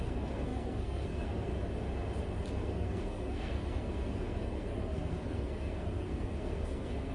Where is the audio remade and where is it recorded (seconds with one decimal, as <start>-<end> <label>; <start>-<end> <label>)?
0.0-1.5 remade; 1.5-2.5 recorded; 2.5-7.1 remade